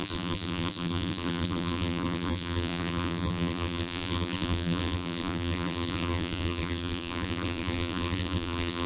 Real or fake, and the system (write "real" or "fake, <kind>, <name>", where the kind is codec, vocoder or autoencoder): fake, vocoder, BigVGAN v2